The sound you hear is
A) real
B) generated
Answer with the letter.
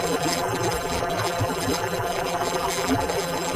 B